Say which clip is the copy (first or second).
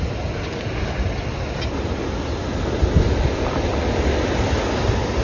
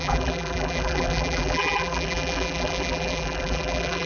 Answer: second